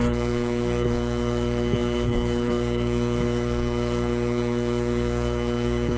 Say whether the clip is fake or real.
fake